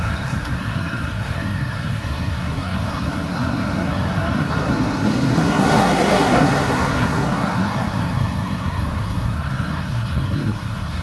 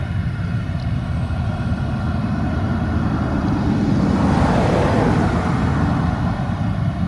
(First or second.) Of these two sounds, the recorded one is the second